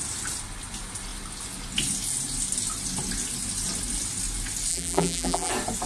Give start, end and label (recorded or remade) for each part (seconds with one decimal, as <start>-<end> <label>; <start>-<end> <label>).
0.0-4.7 recorded; 4.7-5.5 remade; 5.5-5.9 recorded